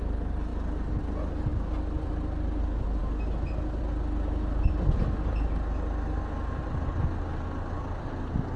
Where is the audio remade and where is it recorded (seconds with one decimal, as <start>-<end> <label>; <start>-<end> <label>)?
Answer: 0.0-8.6 recorded